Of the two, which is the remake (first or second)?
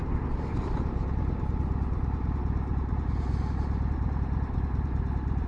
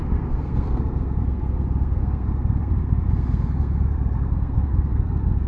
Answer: second